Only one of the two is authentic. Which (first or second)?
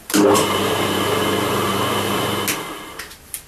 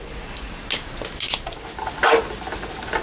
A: second